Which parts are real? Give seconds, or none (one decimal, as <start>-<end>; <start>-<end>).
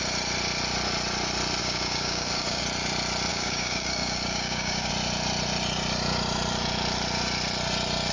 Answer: 0.0-1.6; 2.6-3.3; 4.9-8.1